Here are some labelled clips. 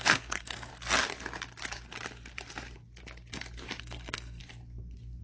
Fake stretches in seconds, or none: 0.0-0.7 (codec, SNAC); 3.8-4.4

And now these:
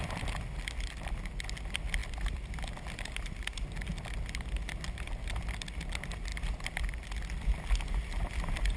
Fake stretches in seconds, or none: 2.0-2.8 (vocoder, BigVGAN v2)

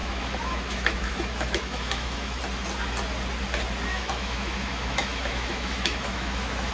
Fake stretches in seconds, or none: 0.0-2.4 (autoencoder, DAC-VAE); 3.9-6.7

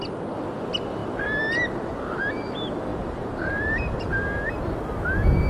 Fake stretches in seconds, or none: 2.9-4.1 (vocoder, BigVGAN v2)

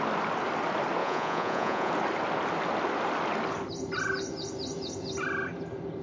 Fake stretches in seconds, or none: 1.0-1.9 (vocoder, Vocos)

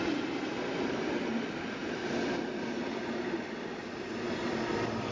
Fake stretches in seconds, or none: none